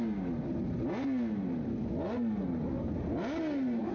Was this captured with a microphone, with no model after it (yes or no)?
yes